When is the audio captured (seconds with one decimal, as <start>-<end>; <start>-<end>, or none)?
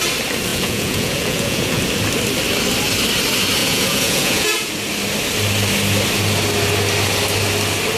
0.0-0.5; 1.8-3.6; 4.7-8.0